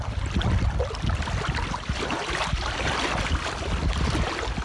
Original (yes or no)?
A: yes